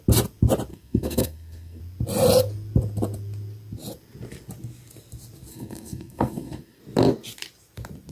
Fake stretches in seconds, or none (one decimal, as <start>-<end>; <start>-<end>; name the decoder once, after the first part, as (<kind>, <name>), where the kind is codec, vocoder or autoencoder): 0.7-1.8 (codec, SNAC); 5.5-6.8